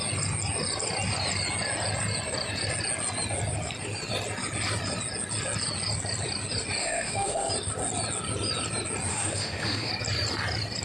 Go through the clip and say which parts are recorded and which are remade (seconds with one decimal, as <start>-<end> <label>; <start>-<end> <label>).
0.0-6.8 recorded; 6.8-7.5 remade; 7.5-9.1 recorded; 9.1-9.9 remade; 9.9-10.8 recorded